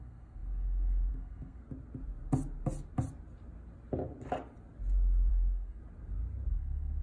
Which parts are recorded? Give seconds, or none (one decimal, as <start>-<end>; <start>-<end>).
1.6-5.3; 5.8-6.5